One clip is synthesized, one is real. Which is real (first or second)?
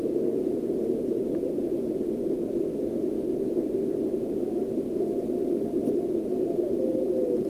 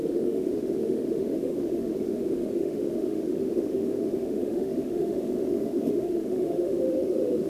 first